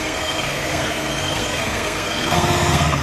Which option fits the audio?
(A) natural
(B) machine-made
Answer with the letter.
B